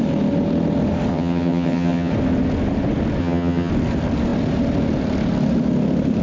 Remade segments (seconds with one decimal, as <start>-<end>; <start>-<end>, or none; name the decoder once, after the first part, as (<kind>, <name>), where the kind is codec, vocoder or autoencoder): 1.1-2.1 (vocoder, HiFi-GAN); 3.2-3.7